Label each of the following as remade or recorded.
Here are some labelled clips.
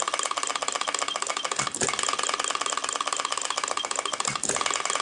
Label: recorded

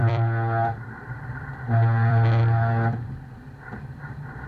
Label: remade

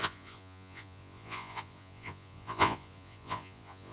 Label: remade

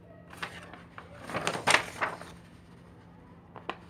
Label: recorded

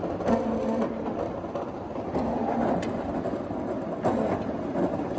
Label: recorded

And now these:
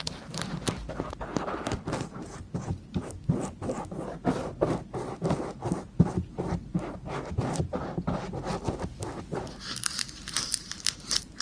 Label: recorded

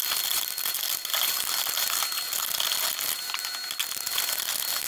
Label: recorded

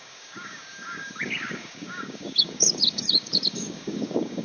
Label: remade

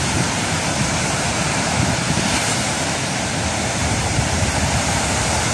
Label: remade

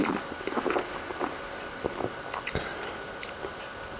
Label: recorded